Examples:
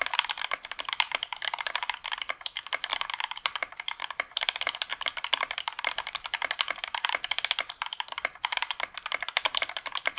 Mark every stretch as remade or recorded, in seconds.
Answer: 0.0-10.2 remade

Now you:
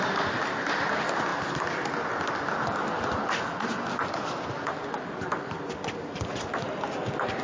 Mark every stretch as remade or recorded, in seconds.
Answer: 0.0-7.4 recorded

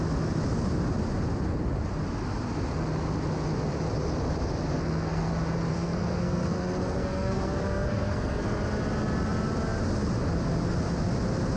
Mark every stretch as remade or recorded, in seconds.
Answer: 0.0-4.7 recorded; 4.7-5.3 remade; 5.3-5.7 recorded; 5.7-8.4 remade; 8.4-11.6 recorded

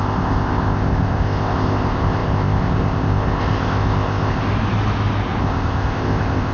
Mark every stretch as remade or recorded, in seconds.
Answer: 0.0-4.4 remade; 4.4-5.4 recorded; 5.4-6.5 remade

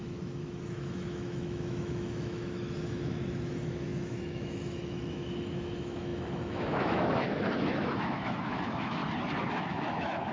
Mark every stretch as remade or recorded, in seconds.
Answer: 0.0-9.0 remade; 9.0-9.5 recorded; 9.5-10.3 remade

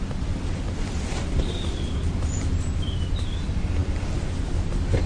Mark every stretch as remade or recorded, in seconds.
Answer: 0.0-5.1 recorded

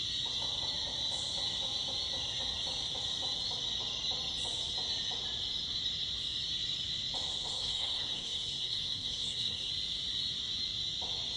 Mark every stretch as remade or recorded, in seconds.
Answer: 0.0-7.5 recorded; 7.5-9.7 remade; 9.7-11.4 recorded